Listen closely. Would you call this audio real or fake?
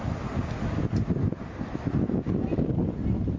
real